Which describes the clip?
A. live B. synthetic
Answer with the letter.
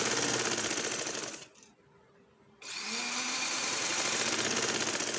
A